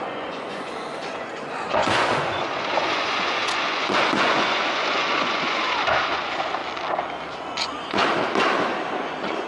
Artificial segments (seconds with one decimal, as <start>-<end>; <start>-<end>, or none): 0.0-6.6; 7.4-8.0; 9.0-9.5